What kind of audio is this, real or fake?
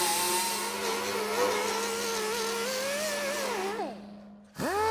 real